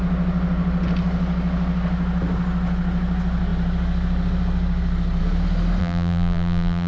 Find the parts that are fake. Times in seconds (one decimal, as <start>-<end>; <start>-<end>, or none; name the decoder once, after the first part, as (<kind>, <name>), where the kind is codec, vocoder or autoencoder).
5.8-6.9 (vocoder, BigVGAN v2)